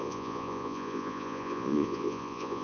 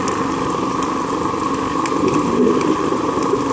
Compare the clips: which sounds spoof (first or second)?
first